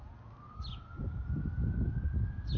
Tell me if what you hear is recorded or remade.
recorded